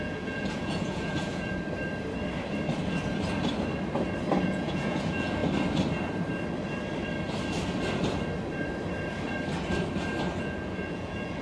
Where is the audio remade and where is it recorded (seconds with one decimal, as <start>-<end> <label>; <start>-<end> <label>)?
0.0-1.5 remade; 1.5-4.4 recorded; 4.4-5.4 remade; 5.4-10.4 recorded; 10.4-11.4 remade

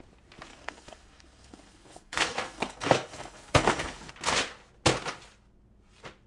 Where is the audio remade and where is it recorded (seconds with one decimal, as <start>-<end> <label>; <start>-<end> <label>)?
0.0-0.5 recorded; 0.5-4.1 remade; 4.1-6.3 recorded